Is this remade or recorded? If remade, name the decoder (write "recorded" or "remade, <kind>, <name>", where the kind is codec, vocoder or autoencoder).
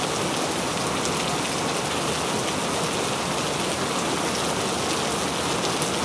recorded